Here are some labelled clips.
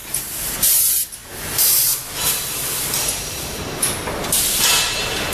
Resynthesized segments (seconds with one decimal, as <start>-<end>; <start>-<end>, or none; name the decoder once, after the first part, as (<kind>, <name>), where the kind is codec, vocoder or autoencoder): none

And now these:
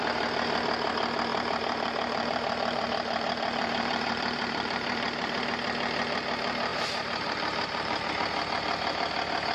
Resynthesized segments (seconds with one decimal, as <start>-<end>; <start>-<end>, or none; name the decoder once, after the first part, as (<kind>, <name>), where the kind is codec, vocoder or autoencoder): 1.3-5.4 (vocoder, BigVGAN v2); 6.7-8.1

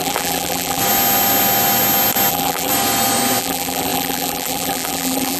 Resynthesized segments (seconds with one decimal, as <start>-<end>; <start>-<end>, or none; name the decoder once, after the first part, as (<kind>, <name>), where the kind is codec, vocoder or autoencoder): 0.0-0.8 (vocoder, BigVGAN v2); 2.3-2.7; 3.4-5.4

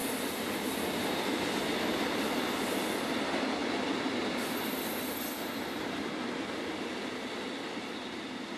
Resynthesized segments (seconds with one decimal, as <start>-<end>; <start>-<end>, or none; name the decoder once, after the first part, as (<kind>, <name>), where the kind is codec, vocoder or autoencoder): none

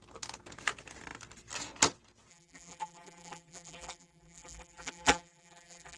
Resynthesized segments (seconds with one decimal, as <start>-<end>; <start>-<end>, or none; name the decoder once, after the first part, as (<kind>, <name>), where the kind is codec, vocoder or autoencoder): 2.3-6.0 (vocoder, BigVGAN v2)